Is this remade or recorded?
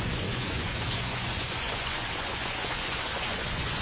remade